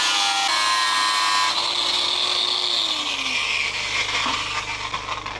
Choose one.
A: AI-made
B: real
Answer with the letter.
B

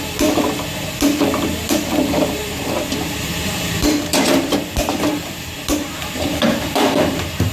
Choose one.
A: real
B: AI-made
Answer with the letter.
B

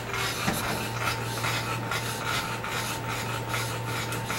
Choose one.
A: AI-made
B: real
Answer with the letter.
B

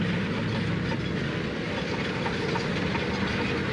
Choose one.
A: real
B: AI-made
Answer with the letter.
A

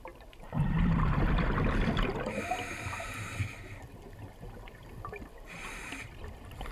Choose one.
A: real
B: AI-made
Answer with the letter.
B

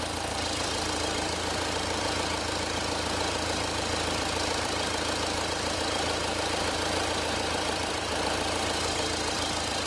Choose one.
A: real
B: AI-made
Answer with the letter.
B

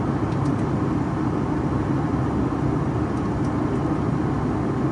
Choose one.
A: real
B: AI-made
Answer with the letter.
A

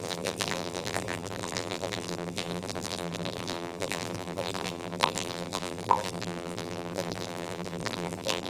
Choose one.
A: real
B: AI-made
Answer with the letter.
B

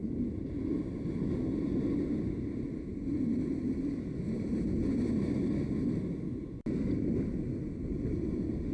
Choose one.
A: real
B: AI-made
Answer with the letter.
A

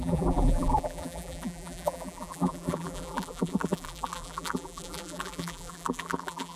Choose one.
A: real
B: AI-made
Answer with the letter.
B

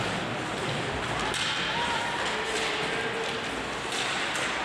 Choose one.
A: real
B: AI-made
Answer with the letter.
A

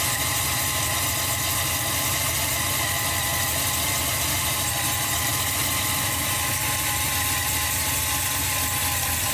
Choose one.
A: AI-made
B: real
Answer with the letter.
B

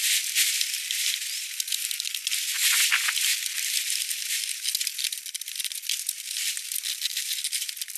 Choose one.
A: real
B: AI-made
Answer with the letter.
A